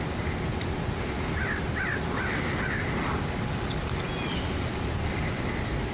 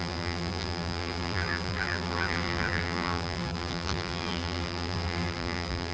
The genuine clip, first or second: first